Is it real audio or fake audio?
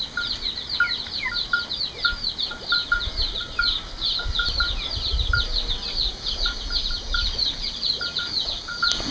real